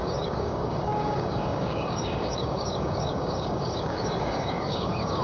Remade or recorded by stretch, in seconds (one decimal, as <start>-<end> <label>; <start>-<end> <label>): 0.0-5.2 remade